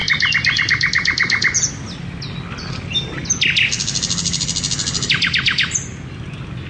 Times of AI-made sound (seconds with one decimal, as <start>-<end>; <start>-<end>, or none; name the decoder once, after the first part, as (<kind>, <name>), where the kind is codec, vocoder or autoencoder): none